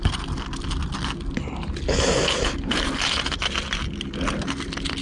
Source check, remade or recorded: recorded